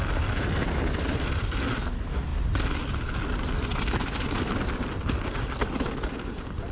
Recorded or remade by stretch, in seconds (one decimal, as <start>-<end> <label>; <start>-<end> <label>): 0.0-6.7 recorded